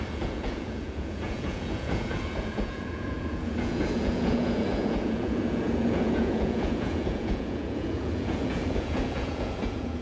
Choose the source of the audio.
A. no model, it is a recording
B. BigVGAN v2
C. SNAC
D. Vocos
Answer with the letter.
D